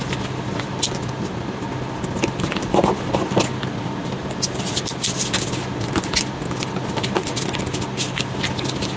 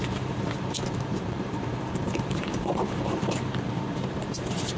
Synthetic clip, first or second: second